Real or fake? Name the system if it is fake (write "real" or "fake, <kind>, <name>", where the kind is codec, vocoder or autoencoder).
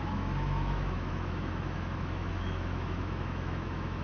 fake, autoencoder, DAC-VAE